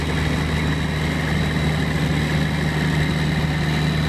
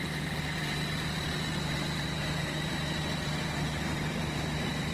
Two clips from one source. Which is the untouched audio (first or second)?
first